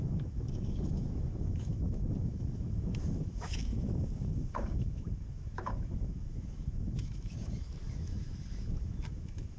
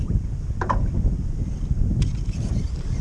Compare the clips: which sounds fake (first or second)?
first